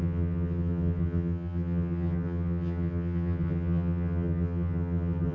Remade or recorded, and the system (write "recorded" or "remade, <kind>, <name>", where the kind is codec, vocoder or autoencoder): remade, vocoder, HiFi-GAN